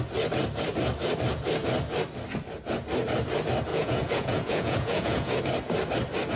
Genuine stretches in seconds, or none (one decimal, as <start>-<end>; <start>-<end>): 0.0-3.7; 5.4-6.4